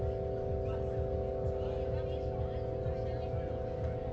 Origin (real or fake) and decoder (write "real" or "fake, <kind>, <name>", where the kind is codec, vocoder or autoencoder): real